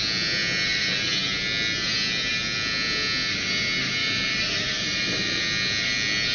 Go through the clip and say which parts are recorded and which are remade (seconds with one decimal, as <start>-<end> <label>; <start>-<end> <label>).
0.0-4.0 recorded; 4.0-5.4 remade; 5.4-6.3 recorded